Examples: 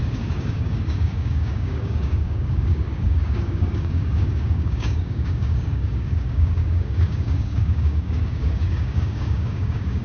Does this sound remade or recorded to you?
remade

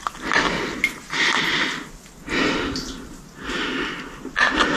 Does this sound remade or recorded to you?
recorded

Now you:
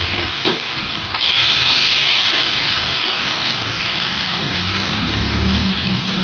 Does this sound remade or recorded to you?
remade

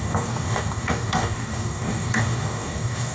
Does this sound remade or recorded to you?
remade